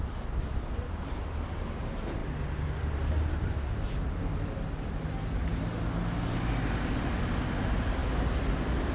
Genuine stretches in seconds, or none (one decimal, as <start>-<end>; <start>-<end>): 0.0-8.9